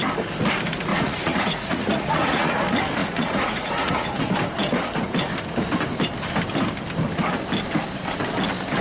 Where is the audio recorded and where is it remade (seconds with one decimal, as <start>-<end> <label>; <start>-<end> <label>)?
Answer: 0.0-0.9 recorded; 0.9-2.6 remade; 2.6-3.0 recorded; 3.0-4.2 remade; 4.2-8.8 recorded